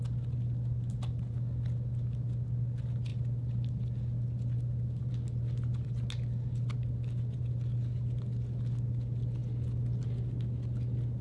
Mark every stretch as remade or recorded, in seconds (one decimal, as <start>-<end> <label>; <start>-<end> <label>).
0.0-11.2 recorded